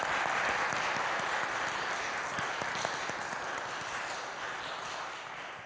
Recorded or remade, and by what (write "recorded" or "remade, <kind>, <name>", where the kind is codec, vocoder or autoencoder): recorded